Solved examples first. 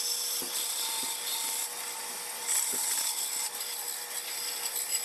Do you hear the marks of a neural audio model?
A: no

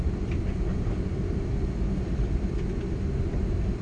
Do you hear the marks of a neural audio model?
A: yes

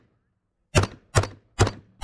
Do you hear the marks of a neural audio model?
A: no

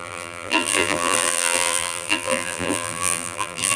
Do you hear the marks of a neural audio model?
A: yes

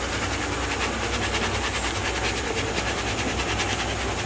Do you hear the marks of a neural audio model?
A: no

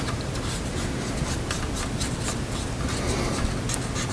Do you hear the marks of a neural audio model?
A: no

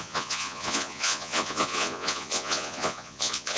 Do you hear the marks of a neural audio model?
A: yes